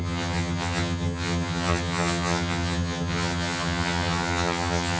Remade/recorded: remade